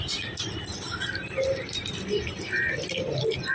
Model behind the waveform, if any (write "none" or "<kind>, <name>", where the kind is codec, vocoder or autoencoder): none